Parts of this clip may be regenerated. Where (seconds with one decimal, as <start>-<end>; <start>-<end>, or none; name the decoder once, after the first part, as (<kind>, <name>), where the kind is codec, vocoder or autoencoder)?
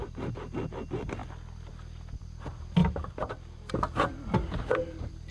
2.8-3.7 (vocoder, BigVGAN v2)